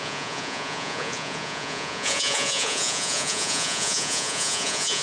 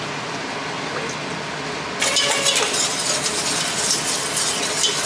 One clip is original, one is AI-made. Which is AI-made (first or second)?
first